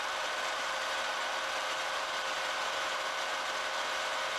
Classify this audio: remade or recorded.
remade